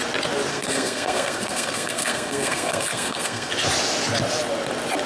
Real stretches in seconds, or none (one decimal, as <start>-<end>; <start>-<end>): 0.0-0.5; 3.5-5.1